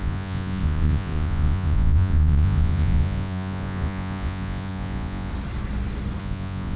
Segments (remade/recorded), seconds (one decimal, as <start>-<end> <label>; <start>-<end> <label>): 0.0-5.3 remade; 5.3-6.2 recorded; 6.2-6.8 remade